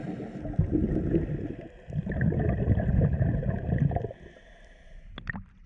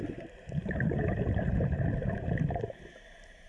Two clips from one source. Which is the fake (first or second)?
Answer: second